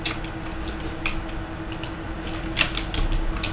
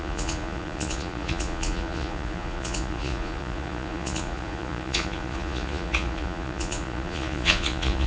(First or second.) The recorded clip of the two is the first